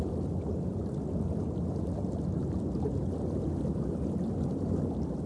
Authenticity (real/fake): real